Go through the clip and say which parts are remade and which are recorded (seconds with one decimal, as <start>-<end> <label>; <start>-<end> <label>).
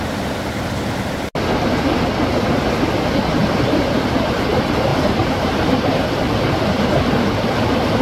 0.0-3.4 recorded; 3.4-4.1 remade; 4.1-4.9 recorded; 4.9-5.9 remade; 5.9-8.0 recorded